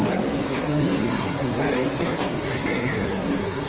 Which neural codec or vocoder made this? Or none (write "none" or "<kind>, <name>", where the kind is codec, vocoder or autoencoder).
codec, SNAC